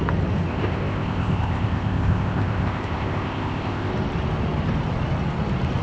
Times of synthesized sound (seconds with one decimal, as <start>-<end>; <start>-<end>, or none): 0.5-3.9